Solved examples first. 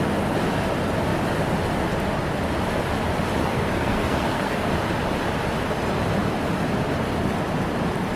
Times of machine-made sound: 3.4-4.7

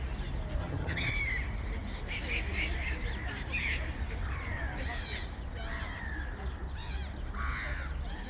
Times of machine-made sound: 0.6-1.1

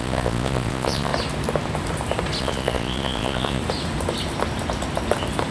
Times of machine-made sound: 0.0-1.1; 2.4-3.6